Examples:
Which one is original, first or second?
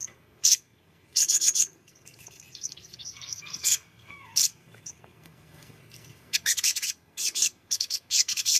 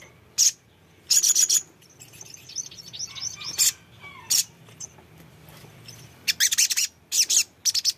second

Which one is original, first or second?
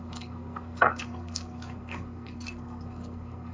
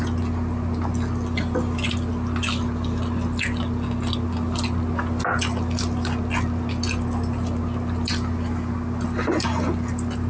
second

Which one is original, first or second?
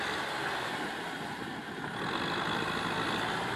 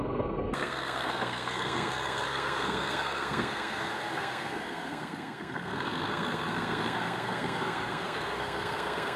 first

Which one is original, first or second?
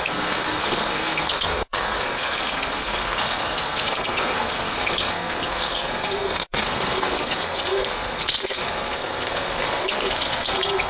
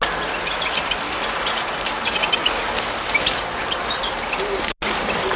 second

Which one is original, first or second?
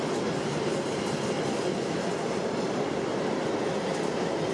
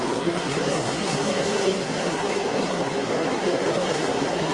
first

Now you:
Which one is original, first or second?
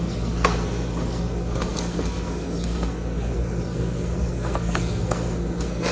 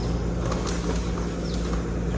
second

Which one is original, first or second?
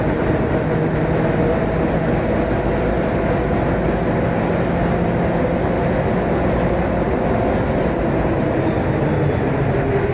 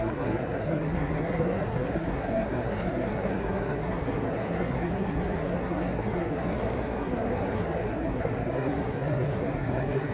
first